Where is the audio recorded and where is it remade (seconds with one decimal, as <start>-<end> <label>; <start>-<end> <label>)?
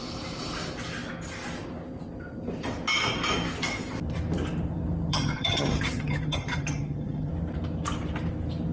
0.0-5.1 recorded; 5.1-7.3 remade; 7.3-8.7 recorded